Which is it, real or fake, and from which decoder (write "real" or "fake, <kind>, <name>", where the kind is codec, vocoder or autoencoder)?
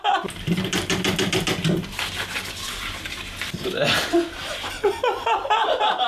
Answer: real